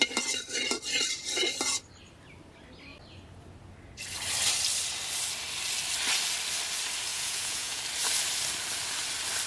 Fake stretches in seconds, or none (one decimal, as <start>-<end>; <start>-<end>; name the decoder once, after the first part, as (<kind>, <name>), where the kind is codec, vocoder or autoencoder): 7.1-7.8 (vocoder, Vocos)